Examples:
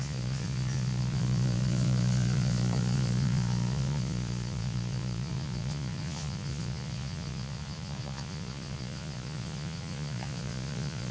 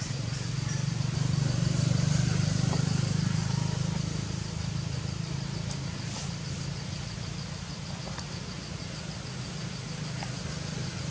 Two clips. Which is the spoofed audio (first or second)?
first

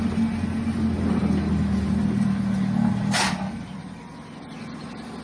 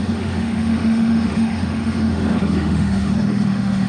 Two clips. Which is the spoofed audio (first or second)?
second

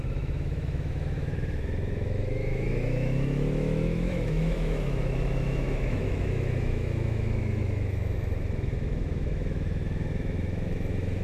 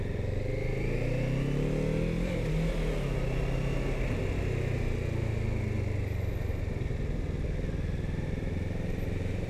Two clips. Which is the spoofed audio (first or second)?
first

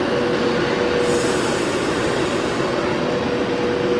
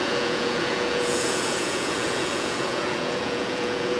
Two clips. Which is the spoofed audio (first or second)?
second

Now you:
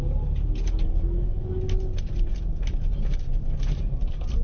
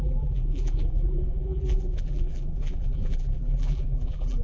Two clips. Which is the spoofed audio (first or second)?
second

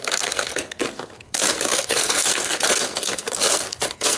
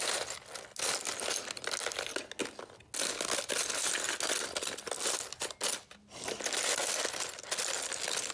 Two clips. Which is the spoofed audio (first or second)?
first